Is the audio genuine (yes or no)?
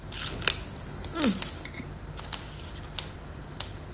yes